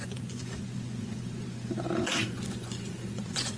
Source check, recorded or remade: remade